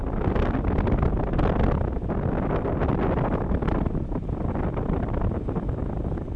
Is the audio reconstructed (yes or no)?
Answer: no